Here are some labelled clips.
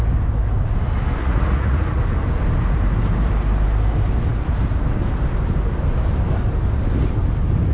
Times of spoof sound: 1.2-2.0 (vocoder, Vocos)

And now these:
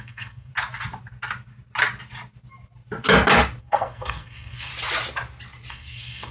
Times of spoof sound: 0.0-0.5 (codec, SNAC); 3.6-4.7; 5.7-6.3